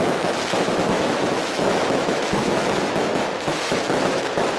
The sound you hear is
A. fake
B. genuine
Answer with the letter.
A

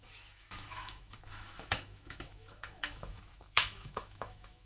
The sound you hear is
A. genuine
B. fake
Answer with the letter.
B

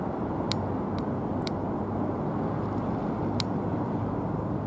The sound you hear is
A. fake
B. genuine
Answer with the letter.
B